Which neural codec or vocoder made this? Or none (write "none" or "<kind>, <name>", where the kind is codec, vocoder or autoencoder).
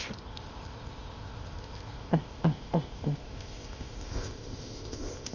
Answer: codec, ZipCodec